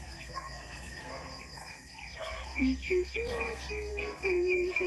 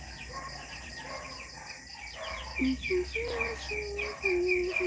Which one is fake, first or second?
first